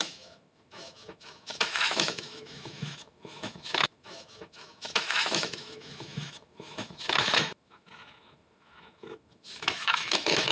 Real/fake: fake